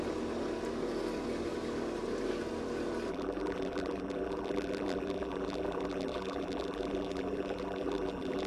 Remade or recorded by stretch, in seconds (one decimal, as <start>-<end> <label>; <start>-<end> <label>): 0.0-3.1 recorded; 3.1-8.5 remade